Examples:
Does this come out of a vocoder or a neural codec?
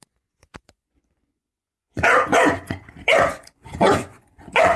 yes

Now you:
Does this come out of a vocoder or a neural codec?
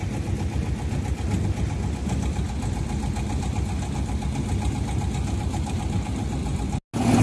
no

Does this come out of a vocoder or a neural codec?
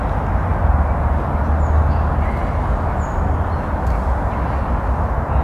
no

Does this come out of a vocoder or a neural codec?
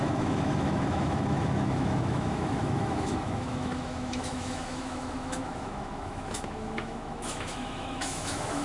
yes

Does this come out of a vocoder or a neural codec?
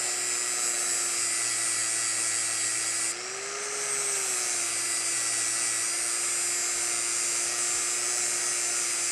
no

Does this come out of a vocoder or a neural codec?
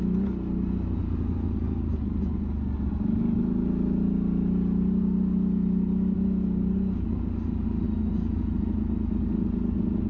no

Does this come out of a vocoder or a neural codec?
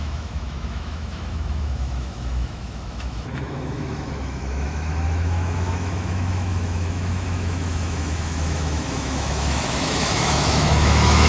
yes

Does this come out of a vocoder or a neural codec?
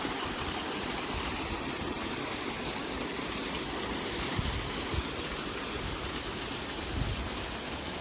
no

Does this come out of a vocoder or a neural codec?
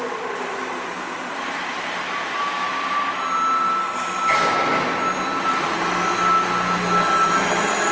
no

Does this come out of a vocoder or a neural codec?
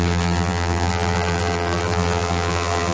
yes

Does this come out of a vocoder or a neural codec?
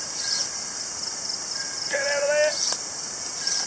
no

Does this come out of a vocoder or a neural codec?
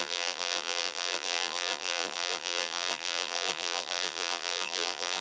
yes